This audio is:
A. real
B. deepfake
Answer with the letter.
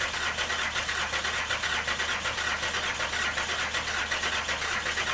A